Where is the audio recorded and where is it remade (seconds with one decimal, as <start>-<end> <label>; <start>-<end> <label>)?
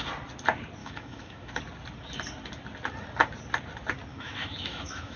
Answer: 0.0-0.8 recorded; 0.8-1.6 remade; 1.6-4.1 recorded; 4.1-5.2 remade